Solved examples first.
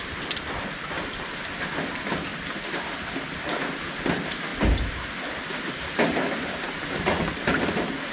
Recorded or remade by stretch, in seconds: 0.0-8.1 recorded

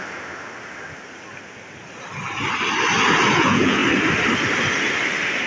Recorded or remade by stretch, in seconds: 0.0-3.3 recorded; 3.3-3.8 remade; 3.8-5.5 recorded

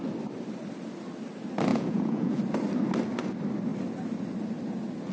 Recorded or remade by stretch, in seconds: 0.0-1.7 recorded; 1.7-2.4 remade; 2.4-5.1 recorded

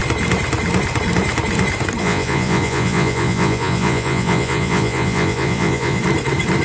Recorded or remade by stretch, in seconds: 0.0-2.0 recorded; 2.0-6.0 remade; 6.0-6.6 recorded

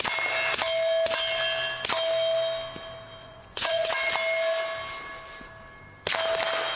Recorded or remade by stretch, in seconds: 0.0-3.2 recorded; 3.2-4.1 remade; 4.1-6.8 recorded